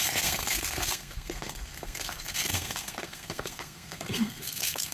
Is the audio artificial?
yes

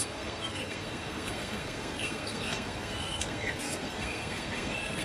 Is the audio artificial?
yes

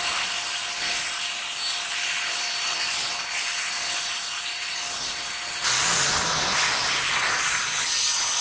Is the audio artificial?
no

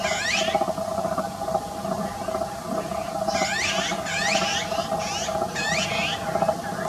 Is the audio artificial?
no